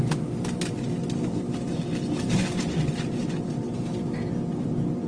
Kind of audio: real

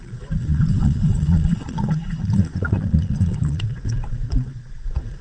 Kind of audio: fake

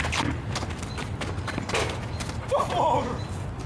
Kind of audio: real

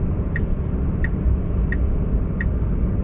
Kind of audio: real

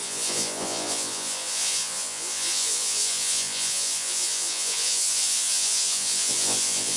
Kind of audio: fake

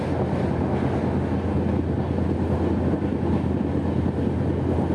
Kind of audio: real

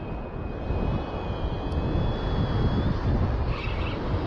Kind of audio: real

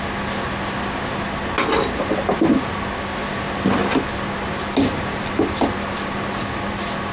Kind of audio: real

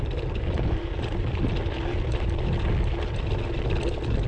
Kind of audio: real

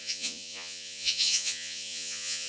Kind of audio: fake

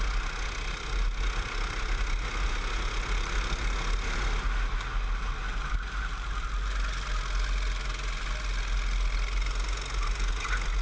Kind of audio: real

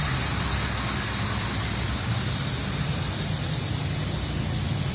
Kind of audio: real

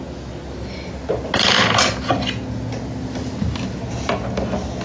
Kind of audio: real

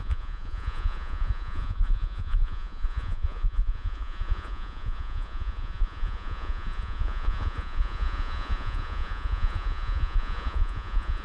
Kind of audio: fake